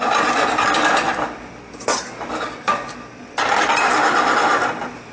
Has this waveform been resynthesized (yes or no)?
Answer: no